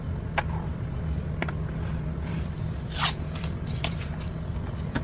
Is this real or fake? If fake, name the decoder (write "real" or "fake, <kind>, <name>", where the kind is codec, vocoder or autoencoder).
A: fake, vocoder, BigVGAN v2